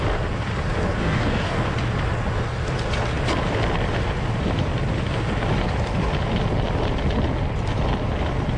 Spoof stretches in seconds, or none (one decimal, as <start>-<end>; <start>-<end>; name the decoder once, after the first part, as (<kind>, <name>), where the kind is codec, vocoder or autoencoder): 1.0-1.7 (codec, DAC)